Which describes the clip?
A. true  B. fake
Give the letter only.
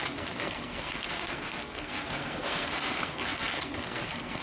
B